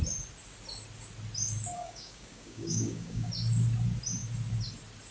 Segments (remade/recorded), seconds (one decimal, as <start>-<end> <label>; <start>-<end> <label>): 0.0-1.7 recorded; 1.7-3.3 remade; 3.3-5.1 recorded